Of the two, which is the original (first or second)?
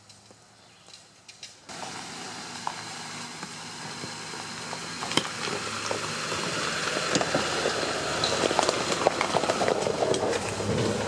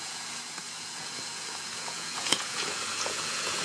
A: first